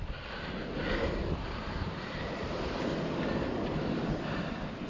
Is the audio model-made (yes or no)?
no